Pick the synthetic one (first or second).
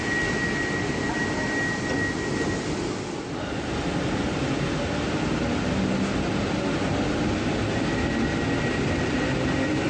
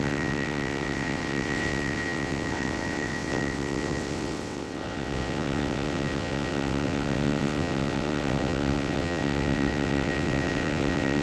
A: second